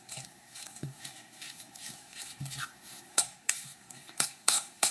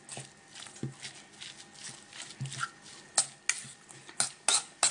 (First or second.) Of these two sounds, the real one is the second